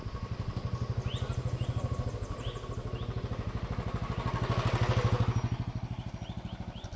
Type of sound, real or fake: real